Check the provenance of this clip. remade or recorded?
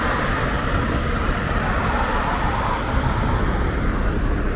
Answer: recorded